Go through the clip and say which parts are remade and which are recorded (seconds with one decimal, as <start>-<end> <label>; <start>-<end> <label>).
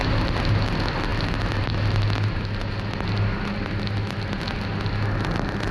0.0-5.7 recorded